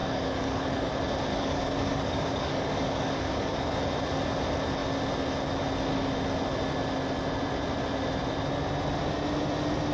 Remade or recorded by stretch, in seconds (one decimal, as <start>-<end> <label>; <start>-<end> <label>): 0.0-0.9 remade; 0.9-1.3 recorded; 1.3-3.7 remade; 3.7-9.9 recorded